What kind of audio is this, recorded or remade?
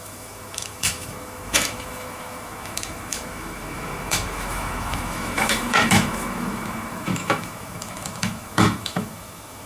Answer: remade